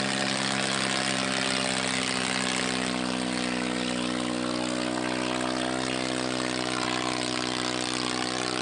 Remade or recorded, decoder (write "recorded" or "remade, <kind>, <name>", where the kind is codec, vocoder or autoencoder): recorded